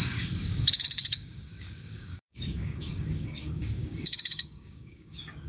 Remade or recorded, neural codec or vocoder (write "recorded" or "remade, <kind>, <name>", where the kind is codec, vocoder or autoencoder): remade, codec, DAC